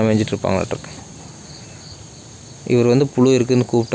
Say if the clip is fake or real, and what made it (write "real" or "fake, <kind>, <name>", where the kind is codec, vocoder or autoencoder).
real